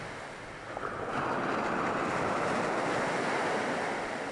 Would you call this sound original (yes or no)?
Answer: yes